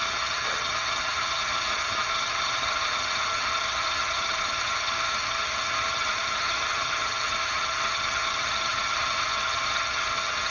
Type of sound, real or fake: fake